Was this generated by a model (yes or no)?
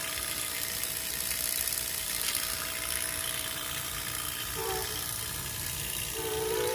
yes